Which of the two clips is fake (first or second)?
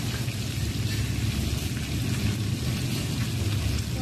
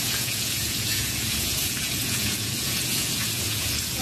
second